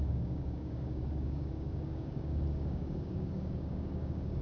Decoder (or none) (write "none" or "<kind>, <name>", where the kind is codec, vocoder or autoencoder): codec, DAC